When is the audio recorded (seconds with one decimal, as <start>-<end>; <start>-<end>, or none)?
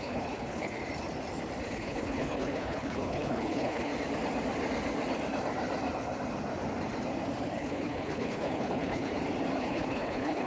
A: 0.8-1.7; 3.9-7.5; 9.1-9.6